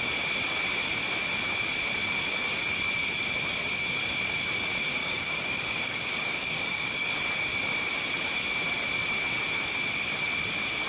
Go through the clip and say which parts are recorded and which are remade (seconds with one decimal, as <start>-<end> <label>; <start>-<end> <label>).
0.0-5.0 recorded; 5.0-7.1 remade; 7.1-10.9 recorded